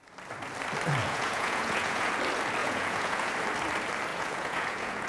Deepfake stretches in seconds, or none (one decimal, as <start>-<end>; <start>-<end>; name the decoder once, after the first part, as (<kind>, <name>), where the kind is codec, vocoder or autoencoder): 1.0-2.1 (vocoder, Vocos); 2.6-3.3; 4.1-5.1